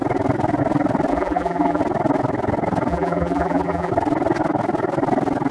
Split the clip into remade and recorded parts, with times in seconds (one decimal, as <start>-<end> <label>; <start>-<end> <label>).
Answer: 0.0-1.1 recorded; 1.1-1.8 remade; 1.8-2.9 recorded; 2.9-3.9 remade; 3.9-5.5 recorded